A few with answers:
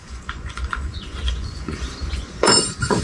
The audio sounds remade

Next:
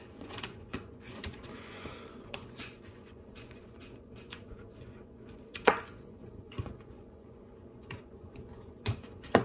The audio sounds remade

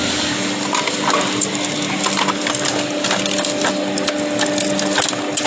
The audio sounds recorded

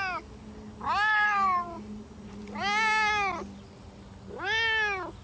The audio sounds recorded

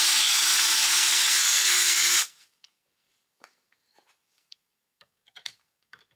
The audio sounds remade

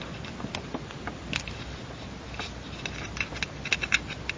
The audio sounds recorded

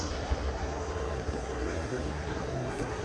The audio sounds remade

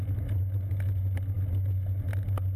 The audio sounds recorded